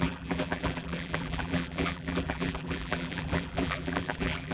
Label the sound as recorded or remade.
remade